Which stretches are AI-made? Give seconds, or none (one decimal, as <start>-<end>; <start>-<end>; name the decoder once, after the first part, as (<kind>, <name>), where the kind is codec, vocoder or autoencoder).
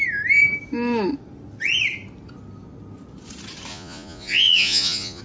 3.7-5.2 (vocoder, Vocos)